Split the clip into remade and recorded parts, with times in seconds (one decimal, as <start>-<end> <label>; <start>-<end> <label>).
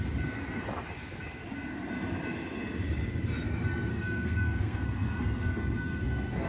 0.0-3.9 recorded; 3.9-6.5 remade